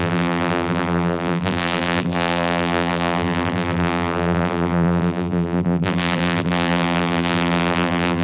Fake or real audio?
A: fake